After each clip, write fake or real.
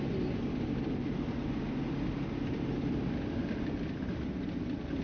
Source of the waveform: real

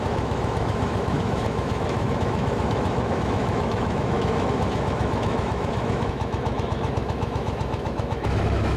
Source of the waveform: fake